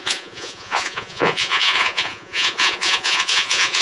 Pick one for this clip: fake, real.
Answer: fake